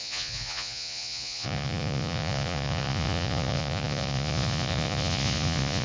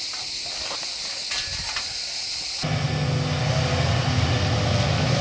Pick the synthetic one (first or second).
first